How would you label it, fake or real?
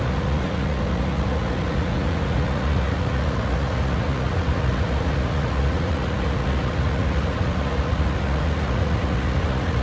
fake